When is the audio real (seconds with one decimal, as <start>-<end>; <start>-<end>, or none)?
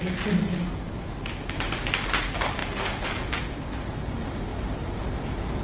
0.0-5.6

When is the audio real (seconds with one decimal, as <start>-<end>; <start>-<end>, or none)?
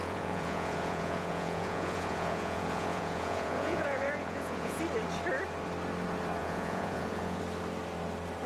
4.8-6.4; 7.4-8.5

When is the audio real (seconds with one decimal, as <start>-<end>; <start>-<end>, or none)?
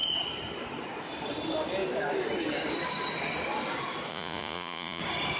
0.0-4.1; 5.0-5.4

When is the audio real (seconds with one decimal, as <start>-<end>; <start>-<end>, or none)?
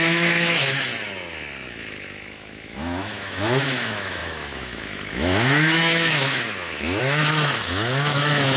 0.9-1.7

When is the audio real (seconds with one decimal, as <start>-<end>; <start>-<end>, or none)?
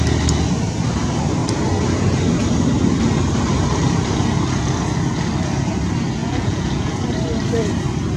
0.0-6.2; 6.9-8.2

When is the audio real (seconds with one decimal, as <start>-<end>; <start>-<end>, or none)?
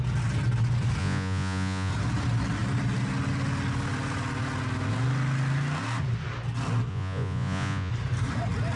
0.0-1.0; 1.9-6.9; 7.9-8.8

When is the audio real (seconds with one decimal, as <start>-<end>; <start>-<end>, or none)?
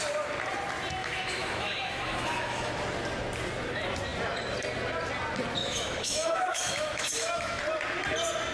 0.0-1.0; 2.7-5.6; 7.6-8.5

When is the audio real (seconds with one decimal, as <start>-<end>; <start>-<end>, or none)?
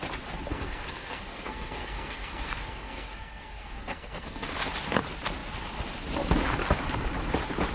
0.0-0.5; 4.5-7.7